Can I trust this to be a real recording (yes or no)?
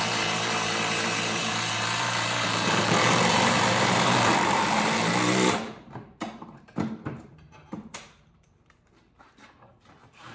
no